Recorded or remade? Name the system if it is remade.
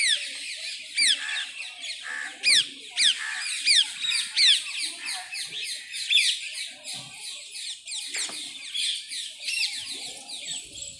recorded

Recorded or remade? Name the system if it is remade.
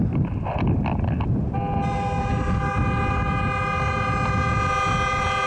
recorded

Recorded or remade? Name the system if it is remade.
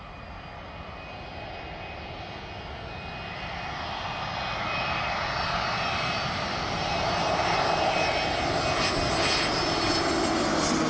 recorded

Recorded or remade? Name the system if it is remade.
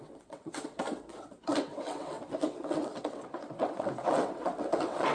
remade, vocoder, WaveNeXt